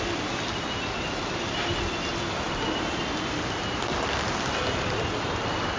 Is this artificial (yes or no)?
no